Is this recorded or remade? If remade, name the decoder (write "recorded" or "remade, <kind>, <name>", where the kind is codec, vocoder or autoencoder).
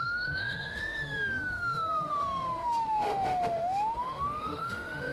remade, autoencoder, DAC-VAE